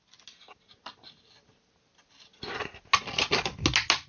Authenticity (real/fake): real